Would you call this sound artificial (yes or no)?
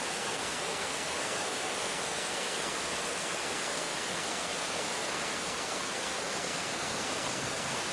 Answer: yes